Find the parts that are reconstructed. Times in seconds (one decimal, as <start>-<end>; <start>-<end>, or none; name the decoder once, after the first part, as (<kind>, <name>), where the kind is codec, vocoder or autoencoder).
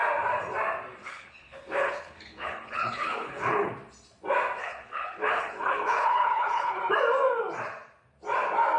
1.0-3.7 (codec, HILCodec); 4.6-6.8